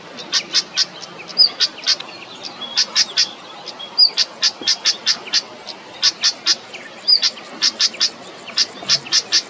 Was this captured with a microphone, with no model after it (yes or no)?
yes